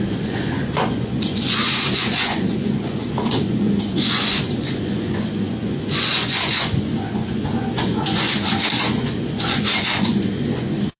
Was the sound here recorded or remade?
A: remade